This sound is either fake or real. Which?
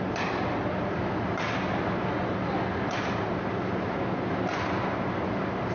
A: real